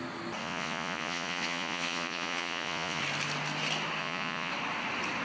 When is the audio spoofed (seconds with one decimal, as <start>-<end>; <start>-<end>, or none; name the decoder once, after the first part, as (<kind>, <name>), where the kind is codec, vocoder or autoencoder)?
0.4-3.0 (vocoder, Vocos); 4.0-4.5